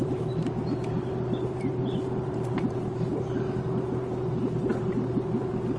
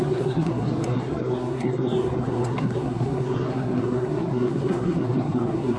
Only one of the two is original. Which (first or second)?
first